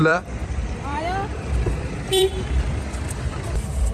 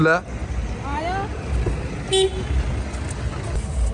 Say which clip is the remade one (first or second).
first